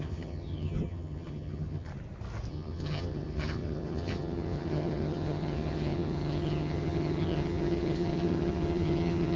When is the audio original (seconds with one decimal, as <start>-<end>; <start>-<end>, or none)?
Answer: 1.9-2.5